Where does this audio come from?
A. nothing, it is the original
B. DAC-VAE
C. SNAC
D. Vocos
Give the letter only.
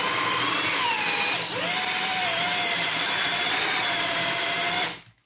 A